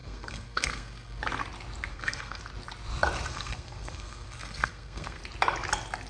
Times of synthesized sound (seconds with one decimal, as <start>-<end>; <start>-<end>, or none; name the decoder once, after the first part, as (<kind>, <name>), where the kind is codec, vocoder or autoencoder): 0.0-1.2 (codec, SNAC); 1.9-2.4; 3.3-5.2